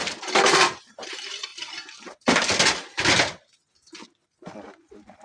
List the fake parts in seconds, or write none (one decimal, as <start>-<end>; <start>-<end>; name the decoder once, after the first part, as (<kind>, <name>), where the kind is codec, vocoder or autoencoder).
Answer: 0.0-1.1 (vocoder, BigVGAN v2)